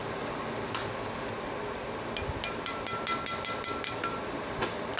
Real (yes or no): yes